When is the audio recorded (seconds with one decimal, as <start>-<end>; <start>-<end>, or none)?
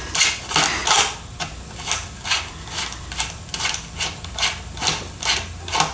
0.0-5.9